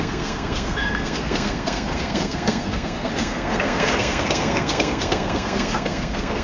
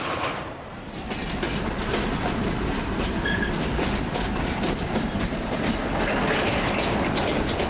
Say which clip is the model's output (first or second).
first